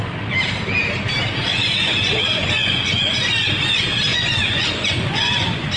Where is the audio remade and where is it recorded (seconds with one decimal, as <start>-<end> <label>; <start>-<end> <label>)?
0.0-1.5 recorded; 1.5-3.2 remade; 3.2-4.1 recorded; 4.1-5.8 remade